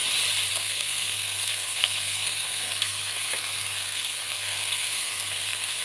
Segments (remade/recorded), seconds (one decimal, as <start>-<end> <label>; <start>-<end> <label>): 0.0-0.5 recorded; 0.5-5.8 remade